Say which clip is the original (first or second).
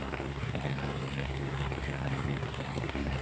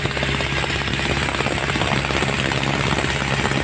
second